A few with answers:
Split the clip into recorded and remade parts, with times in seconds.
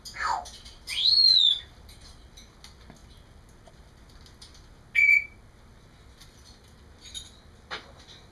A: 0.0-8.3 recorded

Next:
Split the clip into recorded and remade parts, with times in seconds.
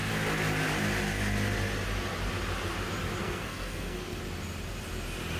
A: 0.0-3.2 recorded; 3.2-4.2 remade; 4.2-5.4 recorded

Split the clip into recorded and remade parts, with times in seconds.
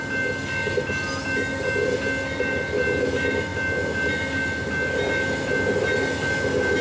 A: 0.0-6.8 recorded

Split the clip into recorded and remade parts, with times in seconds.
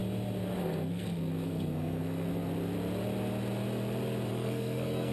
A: 0.0-0.6 recorded; 0.6-2.3 remade; 2.3-4.3 recorded; 4.3-5.1 remade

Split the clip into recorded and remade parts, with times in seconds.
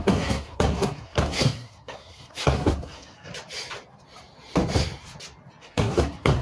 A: 0.0-3.3 remade; 3.3-5.6 recorded; 5.6-6.4 remade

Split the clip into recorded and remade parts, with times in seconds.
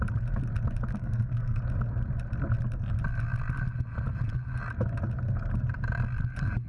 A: 0.0-0.9 recorded; 0.9-1.6 remade; 1.6-6.7 recorded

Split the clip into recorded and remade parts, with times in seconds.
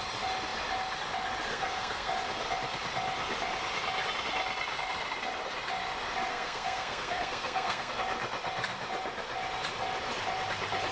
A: 0.0-1.5 recorded; 1.5-2.1 remade; 2.1-6.3 recorded; 6.3-7.9 remade; 7.9-10.9 recorded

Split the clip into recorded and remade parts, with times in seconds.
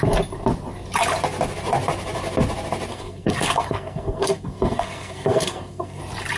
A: 0.0-2.9 recorded; 2.9-6.0 remade; 6.0-6.4 recorded